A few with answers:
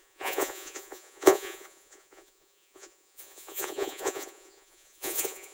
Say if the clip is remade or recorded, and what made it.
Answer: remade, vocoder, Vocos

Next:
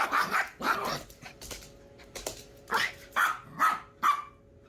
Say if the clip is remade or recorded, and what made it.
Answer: recorded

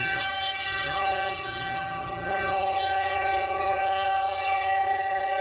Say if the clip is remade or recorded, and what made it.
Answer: remade, vocoder, HiFi-GAN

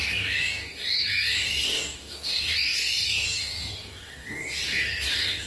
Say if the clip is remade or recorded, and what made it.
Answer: remade, codec, DAC